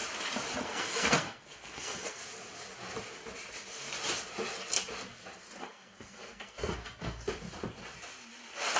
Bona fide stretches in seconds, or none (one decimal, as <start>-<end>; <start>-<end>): 0.0-0.6; 2.2-5.6; 7.2-8.8